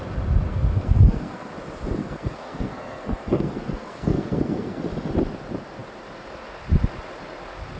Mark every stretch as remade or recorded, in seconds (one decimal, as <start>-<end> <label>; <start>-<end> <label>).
0.0-0.5 recorded; 0.5-1.5 remade; 1.5-2.0 recorded; 2.0-4.8 remade; 4.8-7.8 recorded